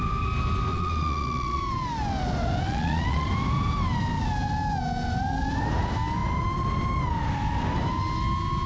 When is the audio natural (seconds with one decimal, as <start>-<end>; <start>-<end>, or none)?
0.0-0.7; 1.6-2.7; 3.3-8.7